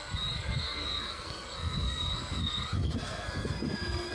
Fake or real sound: fake